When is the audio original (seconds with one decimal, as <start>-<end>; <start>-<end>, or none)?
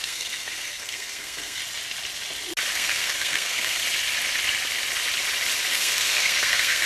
1.6-2.7; 3.8-5.7